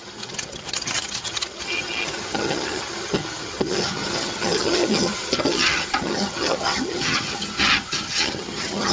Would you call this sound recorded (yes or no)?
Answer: no